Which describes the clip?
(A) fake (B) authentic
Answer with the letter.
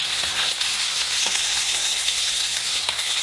A